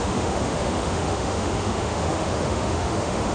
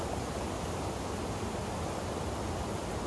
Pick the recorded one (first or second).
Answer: second